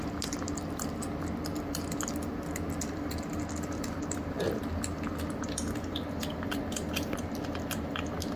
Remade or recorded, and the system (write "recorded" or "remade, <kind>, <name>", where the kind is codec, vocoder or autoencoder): recorded